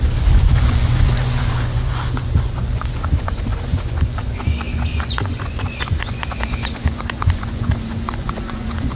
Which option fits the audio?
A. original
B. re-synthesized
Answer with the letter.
B